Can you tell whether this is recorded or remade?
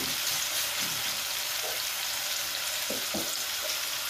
recorded